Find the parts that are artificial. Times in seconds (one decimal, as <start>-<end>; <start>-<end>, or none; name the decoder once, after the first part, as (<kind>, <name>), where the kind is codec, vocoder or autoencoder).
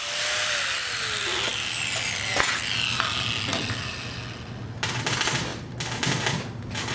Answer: none